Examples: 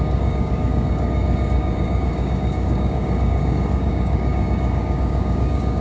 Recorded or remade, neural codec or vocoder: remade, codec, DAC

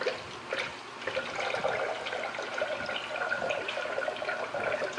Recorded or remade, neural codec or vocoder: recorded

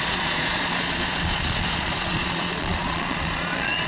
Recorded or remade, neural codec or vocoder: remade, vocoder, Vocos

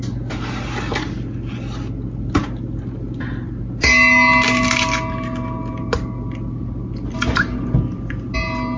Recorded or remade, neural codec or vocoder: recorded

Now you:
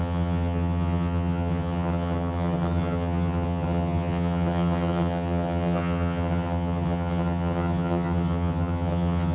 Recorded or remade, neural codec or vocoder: remade, vocoder, HiFi-GAN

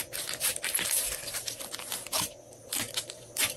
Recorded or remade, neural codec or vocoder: recorded